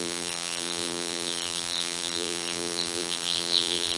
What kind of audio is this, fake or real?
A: fake